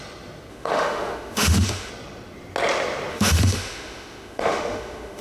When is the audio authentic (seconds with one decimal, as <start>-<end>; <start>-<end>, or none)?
0.0-0.5; 1.9-3.1

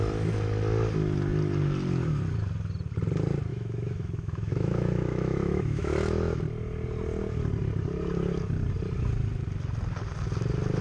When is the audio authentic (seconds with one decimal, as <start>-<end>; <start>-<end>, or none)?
0.0-3.5; 6.4-10.8

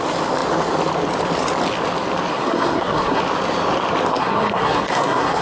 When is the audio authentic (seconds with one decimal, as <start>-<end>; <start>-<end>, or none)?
0.0-2.3; 3.2-4.1

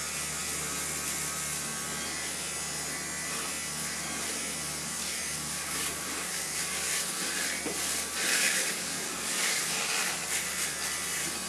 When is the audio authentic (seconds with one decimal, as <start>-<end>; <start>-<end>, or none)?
0.0-4.8; 7.3-8.3; 10.1-11.5

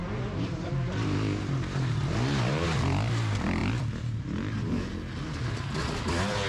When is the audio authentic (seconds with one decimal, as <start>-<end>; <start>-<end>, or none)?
0.7-6.5

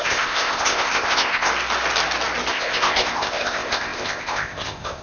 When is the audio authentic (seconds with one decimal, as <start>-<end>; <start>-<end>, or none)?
1.5-2.5